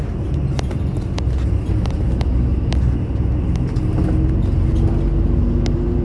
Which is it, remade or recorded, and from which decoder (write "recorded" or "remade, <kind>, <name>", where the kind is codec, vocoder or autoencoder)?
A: recorded